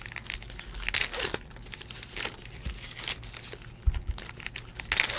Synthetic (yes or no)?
no